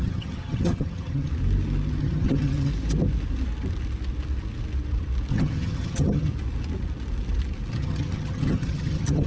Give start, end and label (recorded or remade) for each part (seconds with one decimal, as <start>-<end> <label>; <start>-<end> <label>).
0.0-1.3 remade; 1.3-2.0 recorded; 2.0-2.7 remade; 2.7-5.3 recorded; 5.3-6.3 remade; 6.3-7.7 recorded; 7.7-9.3 remade